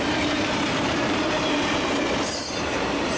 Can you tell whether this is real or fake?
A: fake